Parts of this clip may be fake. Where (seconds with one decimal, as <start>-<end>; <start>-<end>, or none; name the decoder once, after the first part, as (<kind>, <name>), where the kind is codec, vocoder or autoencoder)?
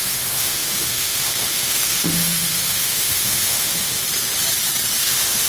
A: 0.0-4.0 (autoencoder, DAC-VAE); 5.0-5.5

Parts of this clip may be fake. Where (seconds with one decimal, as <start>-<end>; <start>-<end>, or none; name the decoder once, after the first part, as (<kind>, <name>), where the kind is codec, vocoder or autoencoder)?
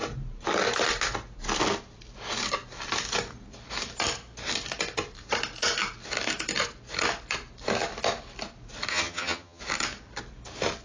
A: 8.9-9.6 (vocoder, HiFi-GAN)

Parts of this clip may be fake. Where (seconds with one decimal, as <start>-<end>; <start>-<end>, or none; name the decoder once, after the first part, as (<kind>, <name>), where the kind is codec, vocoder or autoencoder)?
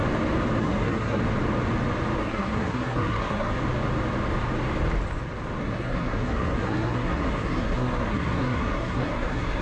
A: 0.6-1.2 (codec, SNAC); 2.2-3.5; 5.6-9.6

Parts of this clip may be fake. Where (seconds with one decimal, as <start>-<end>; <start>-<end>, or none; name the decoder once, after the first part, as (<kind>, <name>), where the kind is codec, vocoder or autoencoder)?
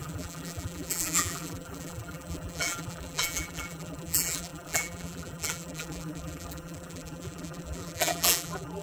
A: 0.0-8.8 (vocoder, BigVGAN v2)